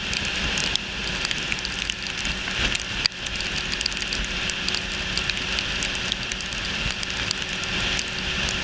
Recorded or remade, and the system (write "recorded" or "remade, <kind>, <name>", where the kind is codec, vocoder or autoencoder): recorded